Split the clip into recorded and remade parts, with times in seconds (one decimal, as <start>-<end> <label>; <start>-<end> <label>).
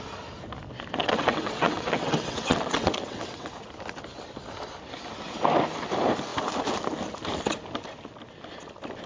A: 0.0-1.0 recorded; 1.0-3.5 remade; 3.5-9.1 recorded